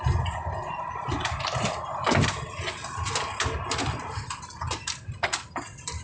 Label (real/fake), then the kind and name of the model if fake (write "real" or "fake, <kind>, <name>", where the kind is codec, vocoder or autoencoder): real